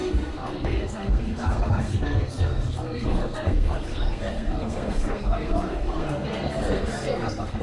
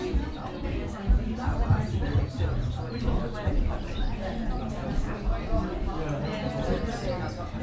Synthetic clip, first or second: first